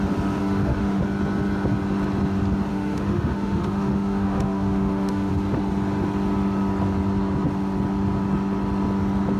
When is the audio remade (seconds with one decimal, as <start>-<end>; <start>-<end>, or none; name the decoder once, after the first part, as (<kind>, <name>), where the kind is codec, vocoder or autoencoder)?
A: 0.4-1.0 (autoencoder, DAC-VAE); 2.7-5.3